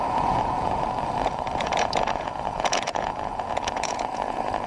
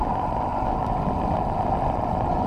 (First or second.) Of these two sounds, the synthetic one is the first